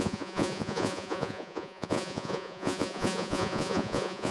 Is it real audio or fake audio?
fake